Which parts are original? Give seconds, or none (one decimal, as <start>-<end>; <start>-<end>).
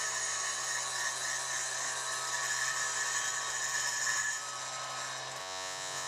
0.0-5.4